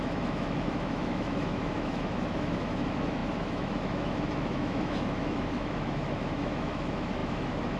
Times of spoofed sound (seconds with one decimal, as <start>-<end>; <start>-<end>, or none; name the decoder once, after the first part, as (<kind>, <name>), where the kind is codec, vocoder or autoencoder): 0.0-7.8 (autoencoder, DAC-VAE)